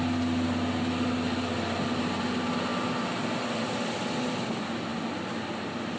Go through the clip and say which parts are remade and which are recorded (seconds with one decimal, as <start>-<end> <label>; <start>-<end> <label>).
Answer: 0.0-6.0 recorded